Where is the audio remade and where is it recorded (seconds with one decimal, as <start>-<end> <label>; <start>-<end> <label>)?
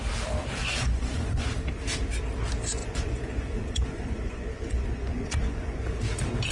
0.0-0.6 recorded; 0.6-1.5 remade; 1.5-2.8 recorded; 2.8-6.0 remade; 6.0-6.5 recorded